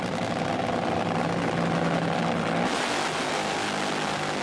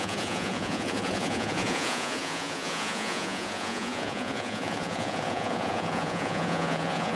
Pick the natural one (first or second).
first